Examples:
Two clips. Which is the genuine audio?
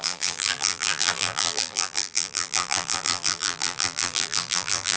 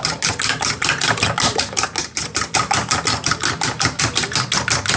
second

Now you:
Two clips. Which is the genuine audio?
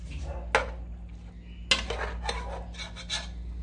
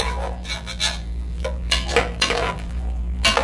first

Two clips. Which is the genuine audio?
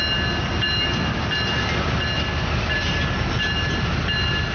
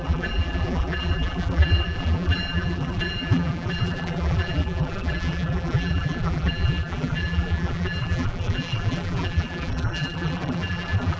first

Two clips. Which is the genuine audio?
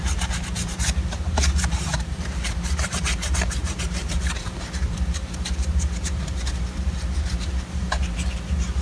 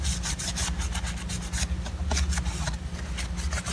second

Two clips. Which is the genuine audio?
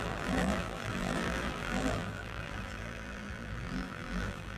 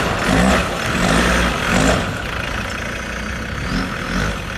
second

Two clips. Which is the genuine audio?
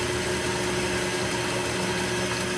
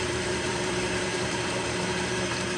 first